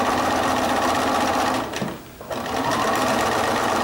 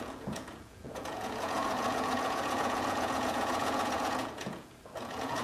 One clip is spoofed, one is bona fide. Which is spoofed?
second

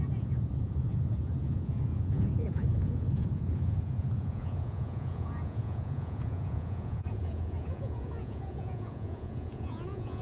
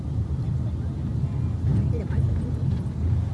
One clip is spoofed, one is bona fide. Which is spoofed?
first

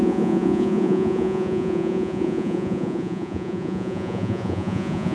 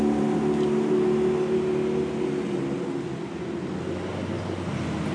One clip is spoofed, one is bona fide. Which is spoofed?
first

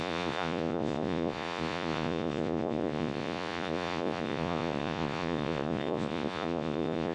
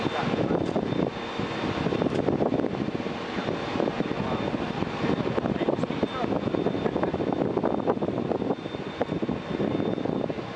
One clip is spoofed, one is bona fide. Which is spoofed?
first